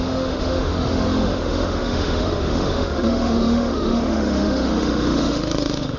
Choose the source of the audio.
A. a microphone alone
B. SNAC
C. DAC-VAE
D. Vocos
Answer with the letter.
C